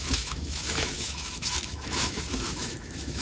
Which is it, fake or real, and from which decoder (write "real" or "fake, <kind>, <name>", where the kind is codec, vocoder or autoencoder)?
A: fake, autoencoder, DAC-VAE